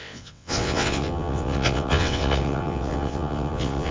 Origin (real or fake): fake